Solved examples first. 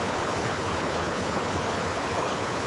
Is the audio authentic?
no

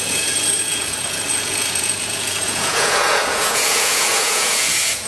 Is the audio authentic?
no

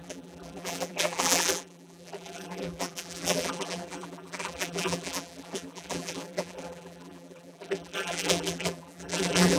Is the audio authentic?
no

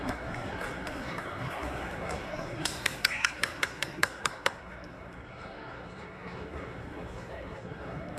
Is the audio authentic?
no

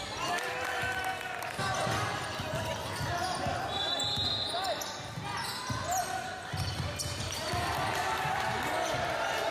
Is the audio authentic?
yes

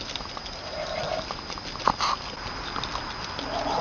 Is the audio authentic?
yes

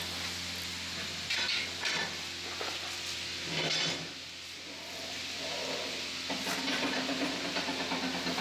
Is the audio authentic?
yes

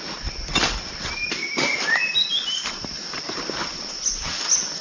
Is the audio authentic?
yes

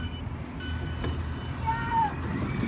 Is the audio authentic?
yes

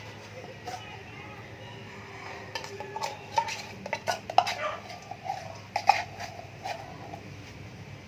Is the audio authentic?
yes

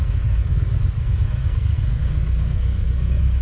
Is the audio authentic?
no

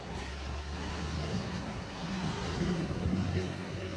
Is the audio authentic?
no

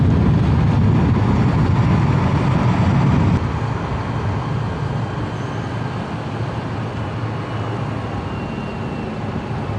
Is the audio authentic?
yes